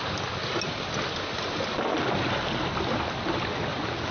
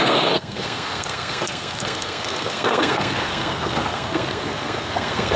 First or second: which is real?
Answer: first